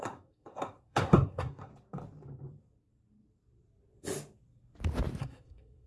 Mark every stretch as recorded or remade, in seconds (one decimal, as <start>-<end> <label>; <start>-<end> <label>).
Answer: 0.0-1.7 remade; 1.7-5.2 recorded; 5.2-5.9 remade